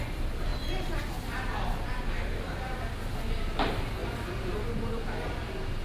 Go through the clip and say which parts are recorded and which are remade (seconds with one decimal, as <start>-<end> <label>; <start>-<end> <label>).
0.0-5.8 recorded